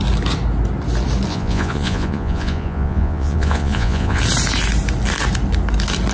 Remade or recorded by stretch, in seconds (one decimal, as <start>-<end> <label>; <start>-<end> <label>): 0.0-1.3 recorded; 1.3-4.2 remade; 4.2-6.1 recorded